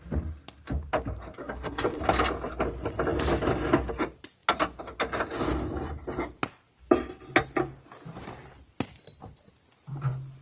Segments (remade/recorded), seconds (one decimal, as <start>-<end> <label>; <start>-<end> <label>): 0.0-1.4 recorded; 1.4-2.0 remade; 2.0-10.4 recorded